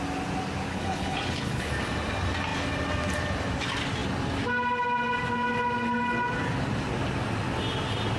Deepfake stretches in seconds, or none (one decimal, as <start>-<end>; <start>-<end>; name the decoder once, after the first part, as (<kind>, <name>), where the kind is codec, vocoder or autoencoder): 0.7-1.7 (codec, HILCodec)